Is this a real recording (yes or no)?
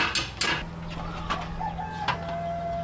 yes